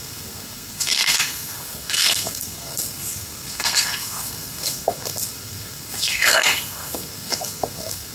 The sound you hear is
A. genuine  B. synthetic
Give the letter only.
B